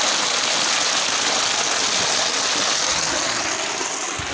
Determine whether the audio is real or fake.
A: real